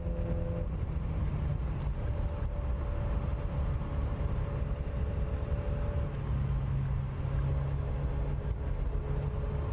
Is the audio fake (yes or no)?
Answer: no